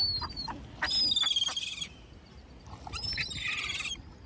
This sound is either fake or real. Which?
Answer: real